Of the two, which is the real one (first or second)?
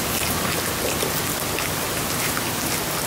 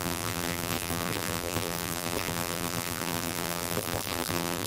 first